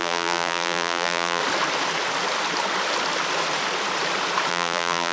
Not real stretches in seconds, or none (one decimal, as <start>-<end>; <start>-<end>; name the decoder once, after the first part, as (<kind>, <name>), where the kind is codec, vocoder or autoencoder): 0.0-1.4 (vocoder, BigVGAN v2); 4.5-5.1